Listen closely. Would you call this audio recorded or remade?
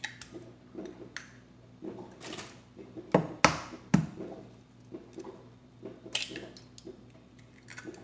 recorded